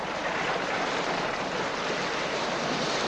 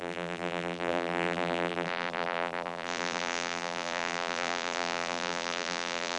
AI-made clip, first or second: second